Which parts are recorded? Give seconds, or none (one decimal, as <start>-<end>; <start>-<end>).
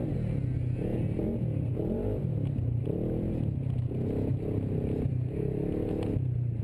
0.0-0.9; 3.3-6.6